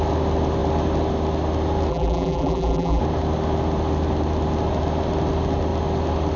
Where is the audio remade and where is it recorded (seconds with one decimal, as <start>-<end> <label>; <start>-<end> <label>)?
0.0-1.9 recorded; 1.9-3.0 remade; 3.0-6.4 recorded

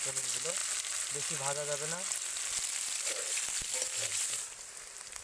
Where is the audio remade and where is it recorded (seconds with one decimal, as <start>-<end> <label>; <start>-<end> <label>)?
0.0-4.1 recorded; 4.1-4.7 remade; 4.7-5.2 recorded

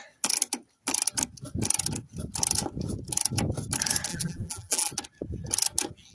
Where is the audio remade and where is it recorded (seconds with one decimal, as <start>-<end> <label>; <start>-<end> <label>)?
0.0-4.1 recorded; 4.1-4.9 remade; 4.9-6.1 recorded

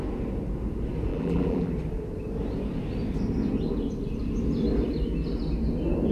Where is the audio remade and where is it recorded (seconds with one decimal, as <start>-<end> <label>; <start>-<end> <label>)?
0.0-1.1 recorded; 1.1-1.7 remade; 1.7-6.1 recorded

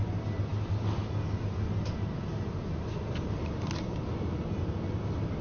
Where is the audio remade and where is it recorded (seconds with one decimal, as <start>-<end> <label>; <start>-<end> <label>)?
0.0-2.3 recorded; 2.3-4.1 remade; 4.1-5.4 recorded

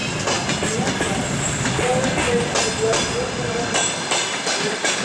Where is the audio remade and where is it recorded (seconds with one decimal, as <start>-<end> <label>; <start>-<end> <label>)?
0.0-1.3 recorded; 1.3-1.9 remade; 1.9-3.9 recorded; 3.9-5.0 remade